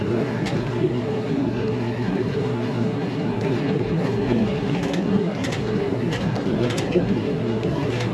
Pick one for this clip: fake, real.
fake